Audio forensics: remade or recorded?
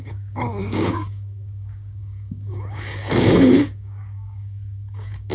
remade